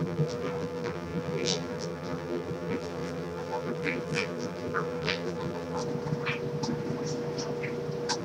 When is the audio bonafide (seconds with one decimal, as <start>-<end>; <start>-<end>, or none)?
5.8-8.2